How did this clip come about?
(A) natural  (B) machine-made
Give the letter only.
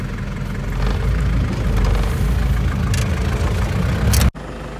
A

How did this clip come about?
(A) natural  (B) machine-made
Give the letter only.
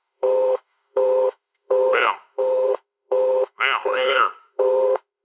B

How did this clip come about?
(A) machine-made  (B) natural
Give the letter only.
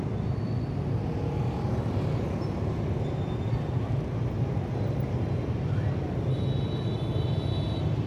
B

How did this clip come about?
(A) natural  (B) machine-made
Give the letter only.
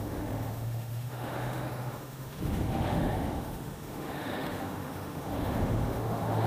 B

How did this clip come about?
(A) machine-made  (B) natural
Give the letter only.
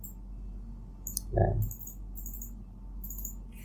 B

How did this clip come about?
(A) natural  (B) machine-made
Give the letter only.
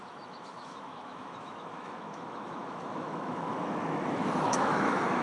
B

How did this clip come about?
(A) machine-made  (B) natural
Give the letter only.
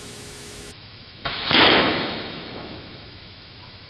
A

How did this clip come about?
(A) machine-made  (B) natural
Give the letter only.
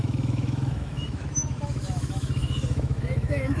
A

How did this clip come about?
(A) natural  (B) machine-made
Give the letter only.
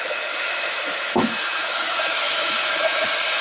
B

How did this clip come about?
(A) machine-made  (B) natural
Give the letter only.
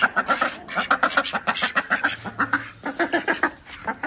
B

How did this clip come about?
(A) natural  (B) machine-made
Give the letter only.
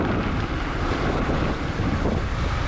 A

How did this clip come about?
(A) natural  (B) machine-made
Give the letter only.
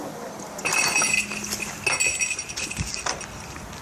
A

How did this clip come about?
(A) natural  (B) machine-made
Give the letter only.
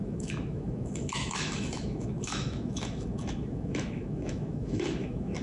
B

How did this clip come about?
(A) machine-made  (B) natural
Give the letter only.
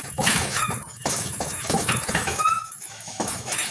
A